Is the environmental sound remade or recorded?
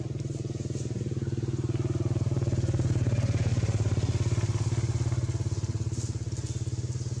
recorded